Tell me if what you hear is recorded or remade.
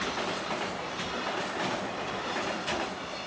recorded